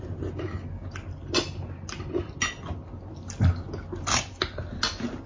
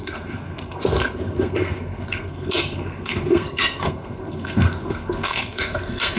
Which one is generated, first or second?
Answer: second